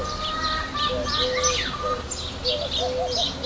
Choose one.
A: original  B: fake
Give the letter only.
A